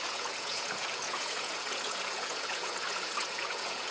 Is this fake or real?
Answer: fake